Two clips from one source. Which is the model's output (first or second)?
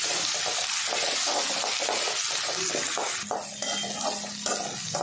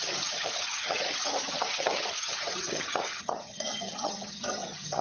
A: second